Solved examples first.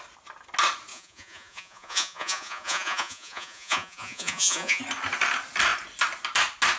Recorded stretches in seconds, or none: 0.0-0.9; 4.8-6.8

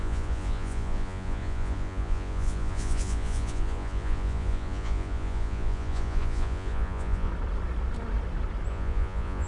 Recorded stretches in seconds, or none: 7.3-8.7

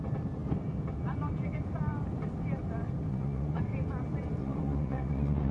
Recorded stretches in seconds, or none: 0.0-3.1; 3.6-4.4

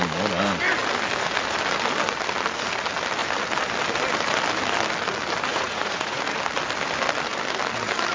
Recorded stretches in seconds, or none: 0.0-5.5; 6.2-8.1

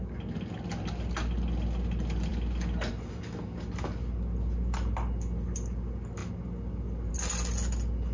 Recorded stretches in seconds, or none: 0.0-8.1